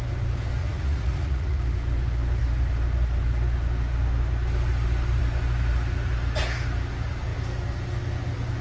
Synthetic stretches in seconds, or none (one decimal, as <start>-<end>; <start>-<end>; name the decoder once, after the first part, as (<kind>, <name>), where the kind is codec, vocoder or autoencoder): 0.6-1.6 (vocoder, Vocos)